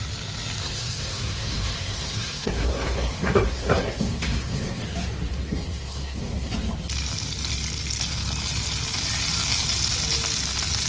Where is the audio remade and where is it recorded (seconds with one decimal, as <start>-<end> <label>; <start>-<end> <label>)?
0.0-0.6 recorded; 0.6-4.8 remade; 4.8-5.3 recorded; 5.3-6.5 remade; 6.5-10.9 recorded